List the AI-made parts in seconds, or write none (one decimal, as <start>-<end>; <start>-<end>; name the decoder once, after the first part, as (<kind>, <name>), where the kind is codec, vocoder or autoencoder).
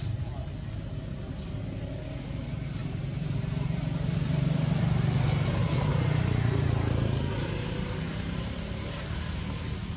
2.8-4.8 (vocoder, BigVGAN v2); 5.9-9.4